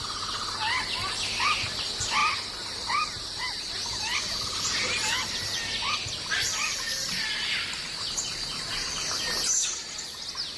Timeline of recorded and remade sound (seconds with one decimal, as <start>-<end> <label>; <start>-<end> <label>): 0.0-10.6 recorded